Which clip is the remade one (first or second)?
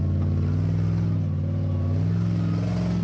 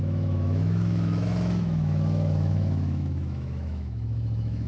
second